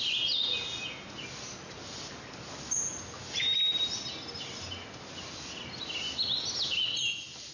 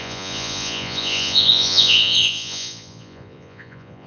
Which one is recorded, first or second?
first